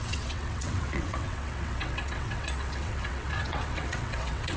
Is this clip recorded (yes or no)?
no